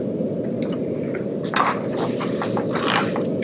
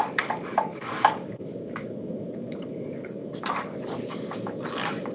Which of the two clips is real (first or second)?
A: first